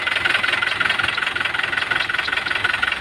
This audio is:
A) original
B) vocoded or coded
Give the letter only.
A